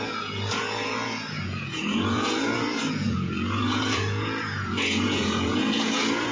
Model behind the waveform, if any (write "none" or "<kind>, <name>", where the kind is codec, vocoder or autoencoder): vocoder, Vocos